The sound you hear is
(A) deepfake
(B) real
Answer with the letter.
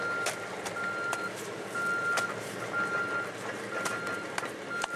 B